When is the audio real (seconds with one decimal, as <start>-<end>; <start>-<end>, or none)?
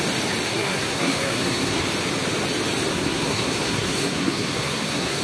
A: 0.0-0.5; 1.8-2.9